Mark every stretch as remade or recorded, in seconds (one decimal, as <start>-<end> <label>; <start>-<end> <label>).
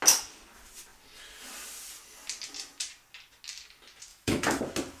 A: 0.0-4.1 recorded; 4.1-4.6 remade; 4.6-5.0 recorded